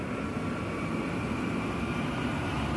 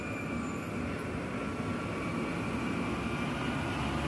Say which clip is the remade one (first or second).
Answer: first